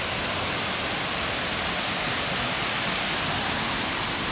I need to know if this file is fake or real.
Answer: real